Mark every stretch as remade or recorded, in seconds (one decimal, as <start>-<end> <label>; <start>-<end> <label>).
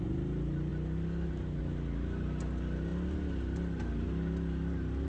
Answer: 0.0-5.1 recorded